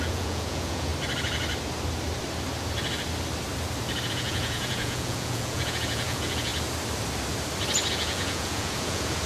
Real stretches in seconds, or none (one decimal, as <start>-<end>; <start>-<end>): 0.9-4.1; 6.5-7.9